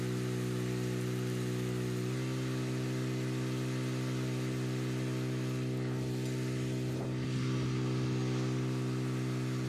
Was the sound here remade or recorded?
recorded